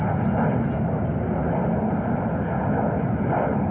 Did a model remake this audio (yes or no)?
no